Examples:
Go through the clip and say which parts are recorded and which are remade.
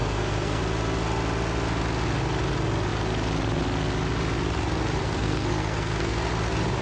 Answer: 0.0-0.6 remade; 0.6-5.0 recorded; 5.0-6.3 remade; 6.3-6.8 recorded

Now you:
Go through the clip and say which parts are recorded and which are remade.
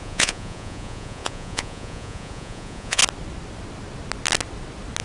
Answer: 0.0-3.0 remade; 3.0-5.0 recorded